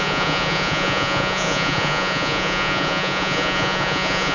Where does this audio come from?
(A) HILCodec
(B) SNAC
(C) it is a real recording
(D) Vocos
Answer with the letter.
D